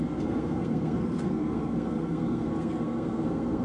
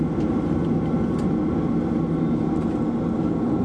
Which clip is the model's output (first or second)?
first